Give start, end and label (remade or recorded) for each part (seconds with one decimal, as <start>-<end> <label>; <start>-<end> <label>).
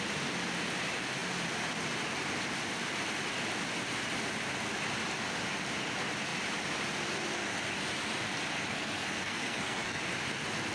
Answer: 0.0-8.7 recorded; 8.7-10.0 remade; 10.0-10.7 recorded